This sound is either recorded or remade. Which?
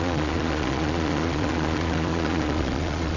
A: remade